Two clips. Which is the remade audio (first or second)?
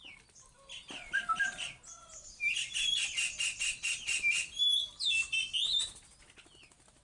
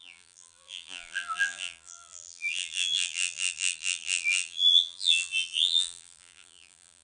second